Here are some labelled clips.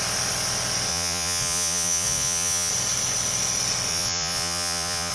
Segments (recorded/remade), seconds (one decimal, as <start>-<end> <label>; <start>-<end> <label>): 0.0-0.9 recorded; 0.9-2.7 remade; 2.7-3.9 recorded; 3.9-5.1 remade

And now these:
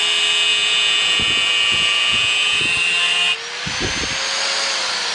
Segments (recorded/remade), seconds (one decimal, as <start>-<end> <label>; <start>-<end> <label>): 0.0-0.5 recorded; 0.5-2.6 remade; 2.6-5.1 recorded

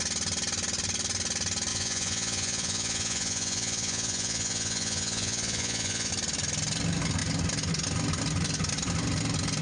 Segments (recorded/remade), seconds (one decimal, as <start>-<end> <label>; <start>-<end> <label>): 0.0-1.7 recorded; 1.7-6.1 remade; 6.1-9.6 recorded

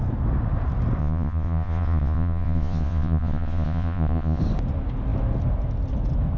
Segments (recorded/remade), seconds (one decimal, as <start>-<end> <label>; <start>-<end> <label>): 0.0-1.0 recorded; 1.0-4.4 remade; 4.4-6.4 recorded